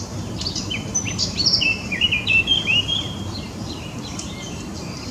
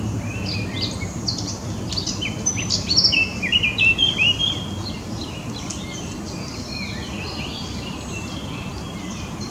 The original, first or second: second